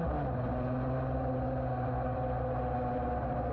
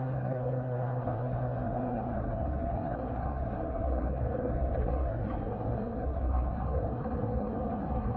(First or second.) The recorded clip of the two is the first